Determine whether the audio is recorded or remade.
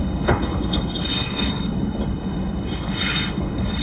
remade